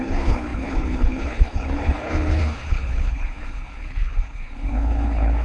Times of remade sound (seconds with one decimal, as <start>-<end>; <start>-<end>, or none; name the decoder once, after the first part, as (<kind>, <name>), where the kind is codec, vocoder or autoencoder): 0.0-5.4 (codec, HILCodec)